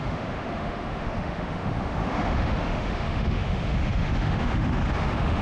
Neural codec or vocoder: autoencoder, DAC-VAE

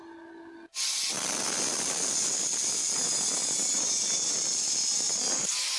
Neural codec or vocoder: none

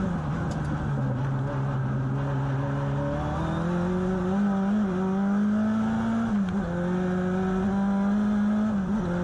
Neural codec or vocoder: none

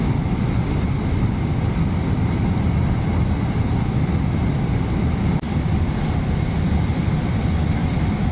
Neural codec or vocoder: none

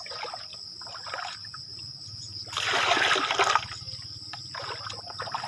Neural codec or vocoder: none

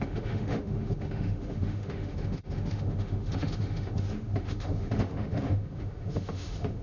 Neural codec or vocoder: autoencoder, DAC-VAE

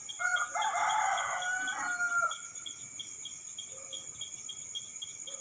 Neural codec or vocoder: none